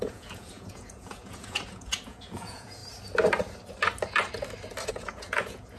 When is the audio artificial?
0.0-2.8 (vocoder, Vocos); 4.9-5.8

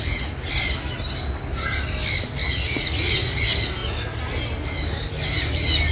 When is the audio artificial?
2.4-3.4 (vocoder, Vocos)

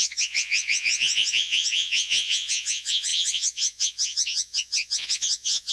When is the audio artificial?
0.0-5.7 (vocoder, Vocos)